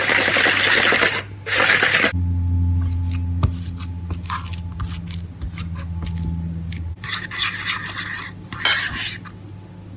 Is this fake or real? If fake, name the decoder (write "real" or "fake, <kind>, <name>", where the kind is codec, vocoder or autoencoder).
real